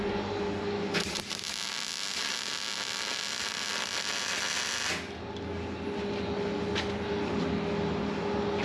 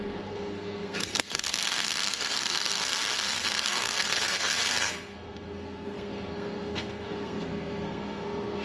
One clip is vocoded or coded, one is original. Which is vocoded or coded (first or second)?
second